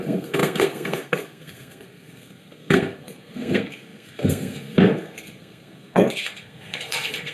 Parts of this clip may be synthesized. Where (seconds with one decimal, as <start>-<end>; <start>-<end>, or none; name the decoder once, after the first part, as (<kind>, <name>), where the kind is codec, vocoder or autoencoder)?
0.0-7.3 (codec, SNAC)